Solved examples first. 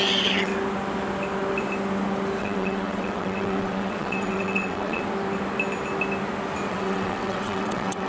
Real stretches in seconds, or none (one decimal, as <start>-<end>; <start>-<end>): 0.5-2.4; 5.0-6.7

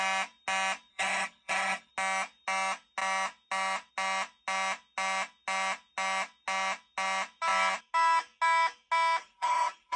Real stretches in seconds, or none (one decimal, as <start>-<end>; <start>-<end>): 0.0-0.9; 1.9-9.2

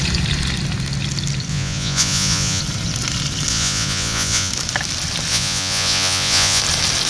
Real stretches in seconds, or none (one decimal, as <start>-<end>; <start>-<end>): 0.0-1.5; 2.6-3.5; 4.5-5.3; 6.6-7.1

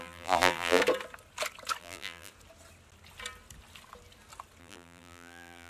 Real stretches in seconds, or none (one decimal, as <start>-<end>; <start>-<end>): 0.8-1.8; 2.3-4.6

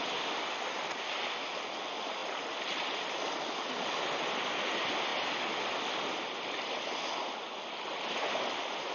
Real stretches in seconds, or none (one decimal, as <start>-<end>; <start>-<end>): 0.0-8.9